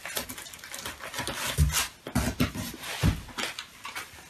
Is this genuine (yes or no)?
yes